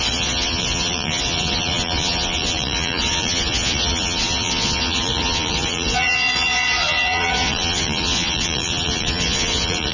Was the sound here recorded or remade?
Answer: remade